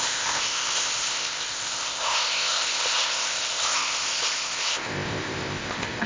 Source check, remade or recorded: remade